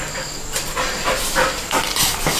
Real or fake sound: real